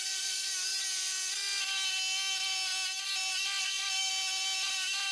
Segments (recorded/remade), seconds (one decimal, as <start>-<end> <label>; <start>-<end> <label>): 0.0-0.5 remade; 0.5-3.6 recorded; 3.6-4.1 remade; 4.1-5.1 recorded